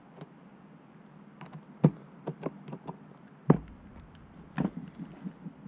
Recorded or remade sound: recorded